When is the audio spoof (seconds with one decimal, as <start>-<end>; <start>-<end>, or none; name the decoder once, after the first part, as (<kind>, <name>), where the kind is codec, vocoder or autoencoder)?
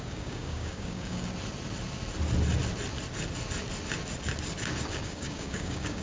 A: 0.0-1.3 (codec, DAC); 4.9-6.0